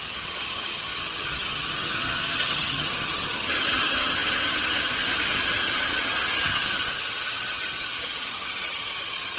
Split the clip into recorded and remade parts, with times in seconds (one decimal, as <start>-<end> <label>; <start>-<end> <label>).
0.0-9.4 remade